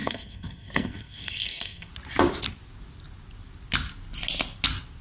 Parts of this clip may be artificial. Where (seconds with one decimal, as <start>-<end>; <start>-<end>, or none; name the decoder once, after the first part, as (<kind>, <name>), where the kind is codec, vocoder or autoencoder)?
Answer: 0.0-1.9 (codec, SNAC)